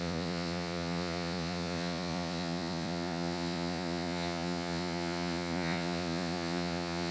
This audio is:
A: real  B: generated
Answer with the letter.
B